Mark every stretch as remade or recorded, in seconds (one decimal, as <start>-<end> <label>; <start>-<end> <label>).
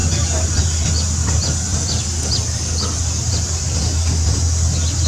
0.0-5.1 recorded